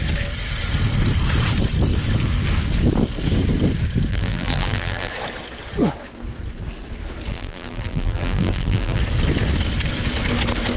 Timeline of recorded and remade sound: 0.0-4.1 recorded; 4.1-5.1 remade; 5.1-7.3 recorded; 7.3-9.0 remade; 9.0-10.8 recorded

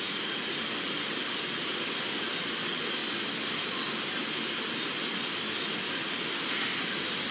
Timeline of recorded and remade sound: 0.0-3.0 recorded; 3.0-3.7 remade; 3.7-7.3 recorded

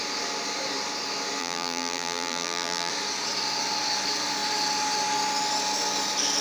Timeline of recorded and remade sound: 0.0-1.4 recorded; 1.4-2.9 remade; 2.9-6.4 recorded

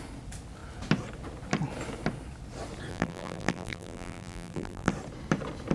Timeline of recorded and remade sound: 0.0-2.9 recorded; 2.9-4.9 remade; 4.9-5.7 recorded

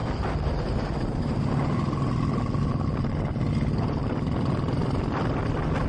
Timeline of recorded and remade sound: 0.0-5.9 recorded

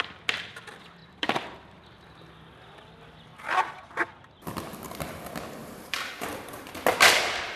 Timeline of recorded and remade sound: 0.0-1.0 recorded; 1.0-2.2 remade; 2.2-5.6 recorded; 5.6-6.7 remade; 6.7-7.6 recorded

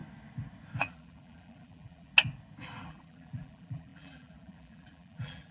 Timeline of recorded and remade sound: 0.0-0.8 recorded; 0.8-2.1 remade; 2.1-2.8 recorded; 2.8-5.5 remade